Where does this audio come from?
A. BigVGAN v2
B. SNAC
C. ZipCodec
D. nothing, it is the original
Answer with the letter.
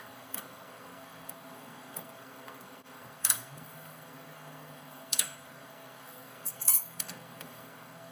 B